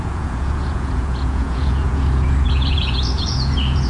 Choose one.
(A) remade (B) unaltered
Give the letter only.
A